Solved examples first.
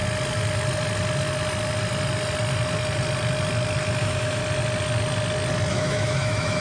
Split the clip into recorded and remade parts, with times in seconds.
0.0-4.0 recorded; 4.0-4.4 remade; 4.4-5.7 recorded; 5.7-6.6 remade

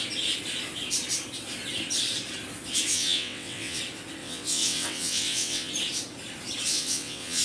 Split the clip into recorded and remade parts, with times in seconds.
0.0-2.9 recorded; 2.9-3.8 remade; 3.8-4.2 recorded; 4.2-5.7 remade; 5.7-6.7 recorded; 6.7-7.4 remade

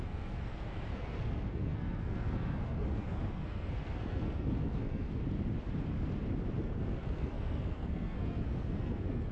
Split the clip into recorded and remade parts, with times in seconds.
0.0-5.2 remade; 5.2-6.6 recorded; 6.6-9.3 remade

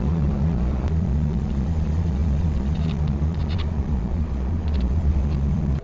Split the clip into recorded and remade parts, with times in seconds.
0.0-5.8 remade